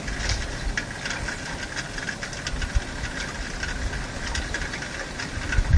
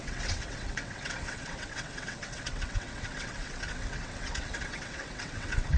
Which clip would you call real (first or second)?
first